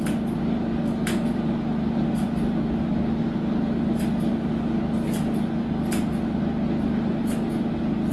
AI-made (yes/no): no